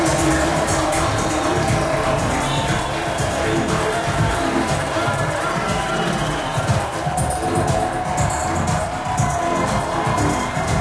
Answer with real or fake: real